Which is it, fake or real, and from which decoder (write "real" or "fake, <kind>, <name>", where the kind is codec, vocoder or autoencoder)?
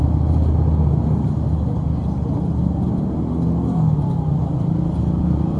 real